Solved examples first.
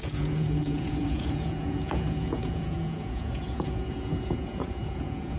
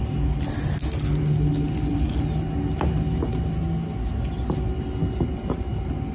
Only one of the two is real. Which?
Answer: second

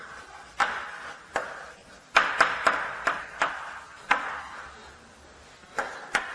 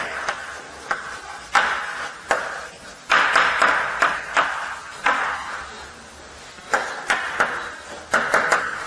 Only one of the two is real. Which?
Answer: second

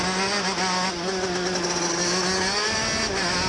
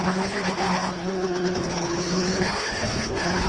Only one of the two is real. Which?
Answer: first